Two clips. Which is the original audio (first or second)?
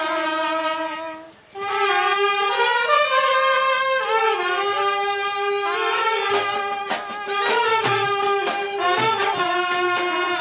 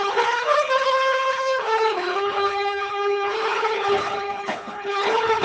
first